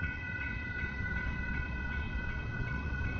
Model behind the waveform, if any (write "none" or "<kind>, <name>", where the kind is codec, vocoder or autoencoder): vocoder, WaveNeXt